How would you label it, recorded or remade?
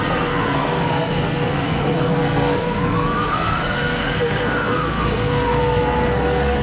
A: remade